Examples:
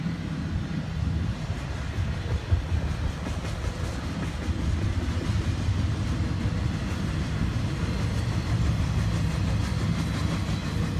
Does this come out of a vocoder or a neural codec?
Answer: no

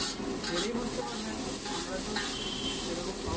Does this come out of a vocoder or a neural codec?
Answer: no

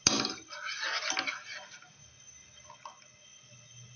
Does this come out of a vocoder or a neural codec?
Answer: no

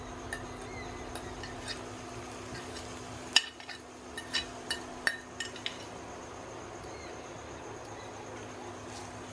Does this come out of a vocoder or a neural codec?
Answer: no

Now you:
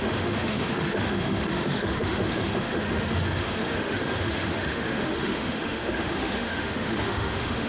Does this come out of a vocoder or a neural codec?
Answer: yes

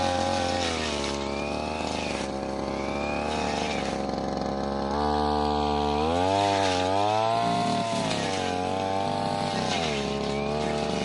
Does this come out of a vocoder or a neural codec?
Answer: no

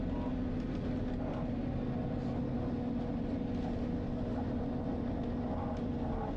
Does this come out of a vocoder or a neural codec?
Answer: no